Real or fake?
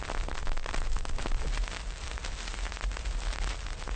real